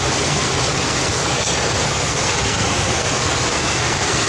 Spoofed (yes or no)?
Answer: yes